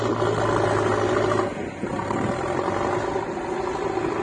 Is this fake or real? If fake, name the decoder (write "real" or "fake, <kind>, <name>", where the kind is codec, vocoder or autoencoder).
real